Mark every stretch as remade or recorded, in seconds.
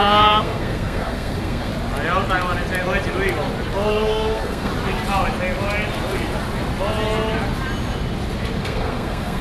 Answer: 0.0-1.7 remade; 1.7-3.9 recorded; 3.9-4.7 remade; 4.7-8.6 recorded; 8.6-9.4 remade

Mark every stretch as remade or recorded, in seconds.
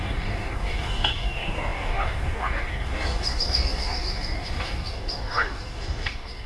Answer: 0.0-6.5 remade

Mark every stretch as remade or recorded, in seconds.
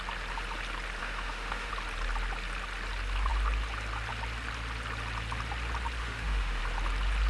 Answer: 0.0-1.0 recorded; 1.0-1.7 remade; 1.7-6.0 recorded; 6.0-6.6 remade; 6.6-7.3 recorded